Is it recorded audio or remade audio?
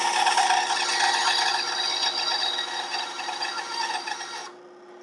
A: recorded